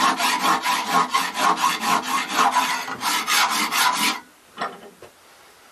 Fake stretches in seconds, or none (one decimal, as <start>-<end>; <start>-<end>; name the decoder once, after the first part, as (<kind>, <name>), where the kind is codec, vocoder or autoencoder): none